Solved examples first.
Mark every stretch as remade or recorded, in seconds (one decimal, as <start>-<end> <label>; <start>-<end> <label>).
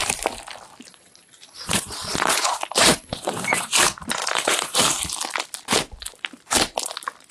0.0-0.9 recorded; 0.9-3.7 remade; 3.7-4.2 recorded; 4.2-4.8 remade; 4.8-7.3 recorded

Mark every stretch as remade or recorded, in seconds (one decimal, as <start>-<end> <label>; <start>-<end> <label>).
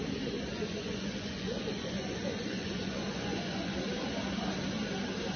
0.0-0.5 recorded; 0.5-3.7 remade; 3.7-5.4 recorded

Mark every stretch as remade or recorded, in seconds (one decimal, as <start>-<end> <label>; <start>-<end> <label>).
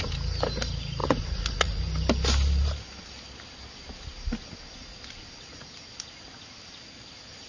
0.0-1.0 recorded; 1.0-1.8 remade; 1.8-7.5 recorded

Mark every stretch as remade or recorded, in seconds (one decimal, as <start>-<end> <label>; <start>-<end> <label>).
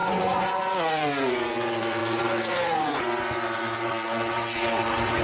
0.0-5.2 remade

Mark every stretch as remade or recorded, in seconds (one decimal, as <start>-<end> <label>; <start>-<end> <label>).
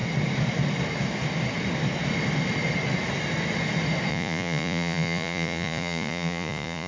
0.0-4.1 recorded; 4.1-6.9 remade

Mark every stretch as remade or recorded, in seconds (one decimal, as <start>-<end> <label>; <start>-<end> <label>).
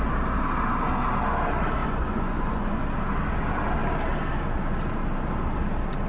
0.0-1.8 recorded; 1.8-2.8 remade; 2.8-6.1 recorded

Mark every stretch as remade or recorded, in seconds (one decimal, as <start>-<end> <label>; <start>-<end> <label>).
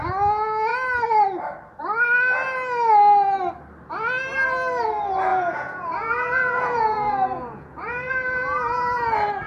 0.0-5.3 recorded; 5.3-8.1 remade; 8.1-9.5 recorded